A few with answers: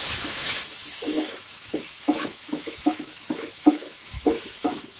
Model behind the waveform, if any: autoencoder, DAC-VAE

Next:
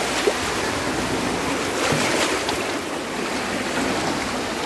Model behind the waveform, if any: none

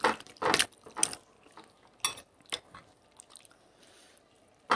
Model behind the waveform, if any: none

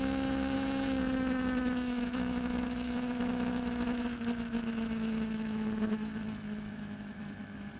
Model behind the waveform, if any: autoencoder, DAC-VAE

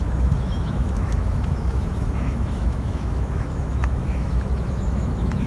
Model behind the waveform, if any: autoencoder, DAC-VAE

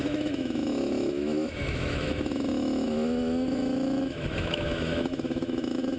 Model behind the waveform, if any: autoencoder, DAC-VAE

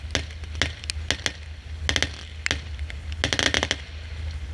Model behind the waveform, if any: none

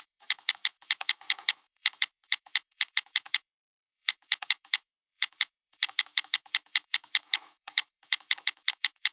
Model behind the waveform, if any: autoencoder, DAC-VAE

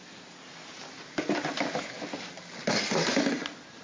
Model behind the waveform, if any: none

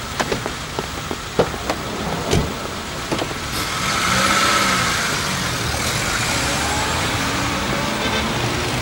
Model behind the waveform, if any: none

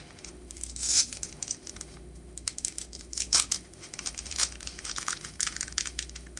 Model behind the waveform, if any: autoencoder, DAC-VAE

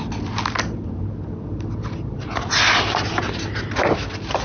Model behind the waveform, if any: none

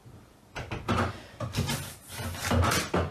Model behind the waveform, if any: none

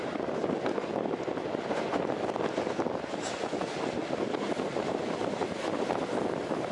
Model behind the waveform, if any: none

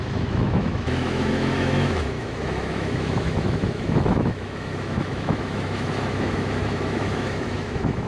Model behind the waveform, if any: autoencoder, DAC-VAE